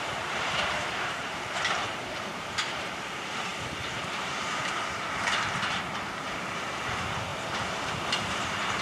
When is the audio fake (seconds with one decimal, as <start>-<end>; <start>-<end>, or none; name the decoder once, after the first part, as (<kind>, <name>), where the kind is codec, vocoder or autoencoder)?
0.0-8.8 (vocoder, BigVGAN v2)

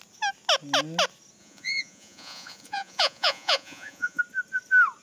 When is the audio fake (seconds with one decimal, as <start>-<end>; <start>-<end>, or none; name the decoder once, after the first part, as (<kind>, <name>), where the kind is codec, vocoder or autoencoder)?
1.4-4.2 (vocoder, Vocos)

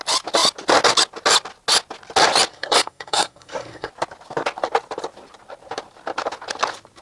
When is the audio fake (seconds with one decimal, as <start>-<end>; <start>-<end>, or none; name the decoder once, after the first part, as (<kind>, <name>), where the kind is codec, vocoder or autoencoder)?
2.5-3.9 (codec, SNAC)

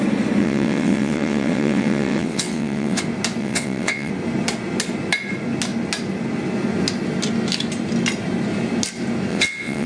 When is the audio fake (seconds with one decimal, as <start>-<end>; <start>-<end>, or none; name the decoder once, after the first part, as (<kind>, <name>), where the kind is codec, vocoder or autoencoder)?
0.4-3.0 (vocoder, WaveNeXt); 3.4-4.1; 9.3-9.9

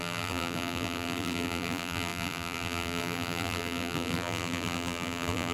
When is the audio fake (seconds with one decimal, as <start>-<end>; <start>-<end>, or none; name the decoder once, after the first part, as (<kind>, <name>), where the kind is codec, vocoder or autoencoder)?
0.0-5.5 (vocoder, BigVGAN v2)